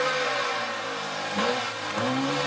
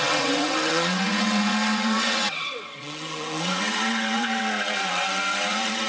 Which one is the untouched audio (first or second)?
first